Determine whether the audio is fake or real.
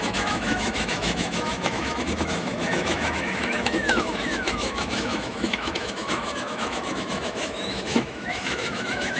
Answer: fake